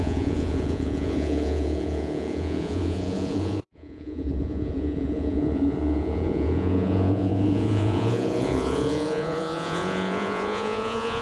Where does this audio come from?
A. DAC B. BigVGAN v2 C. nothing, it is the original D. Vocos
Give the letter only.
D